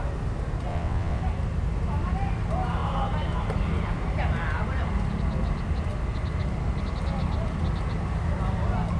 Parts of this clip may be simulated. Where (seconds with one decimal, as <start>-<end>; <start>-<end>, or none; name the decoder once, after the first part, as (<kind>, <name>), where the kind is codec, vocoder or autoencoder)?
0.7-1.2 (vocoder, WaveNeXt)

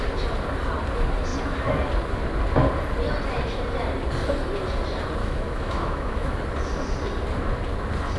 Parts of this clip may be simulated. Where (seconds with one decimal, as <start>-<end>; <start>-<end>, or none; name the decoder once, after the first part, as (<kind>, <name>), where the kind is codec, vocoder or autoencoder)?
5.2-6.4 (autoencoder, DAC-VAE)

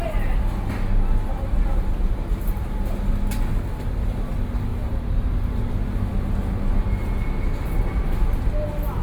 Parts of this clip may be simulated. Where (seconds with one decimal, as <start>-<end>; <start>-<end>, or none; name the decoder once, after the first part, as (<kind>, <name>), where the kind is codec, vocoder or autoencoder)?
1.7-2.9 (vocoder, BigVGAN v2); 4.7-5.7

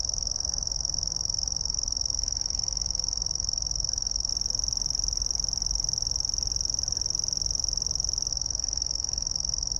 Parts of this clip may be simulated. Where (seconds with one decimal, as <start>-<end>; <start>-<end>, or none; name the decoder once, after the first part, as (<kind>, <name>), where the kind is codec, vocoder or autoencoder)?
0.0-4.3 (autoencoder, DAC-VAE); 8.3-9.8